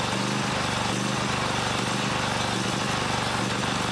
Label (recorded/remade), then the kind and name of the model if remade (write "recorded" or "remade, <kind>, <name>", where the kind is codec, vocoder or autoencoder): recorded